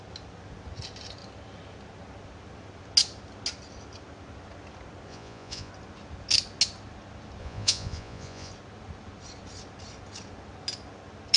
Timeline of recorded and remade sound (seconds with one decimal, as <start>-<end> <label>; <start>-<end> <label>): 0.0-5.1 recorded; 5.1-5.7 remade; 5.7-7.4 recorded; 7.4-8.5 remade; 8.5-11.4 recorded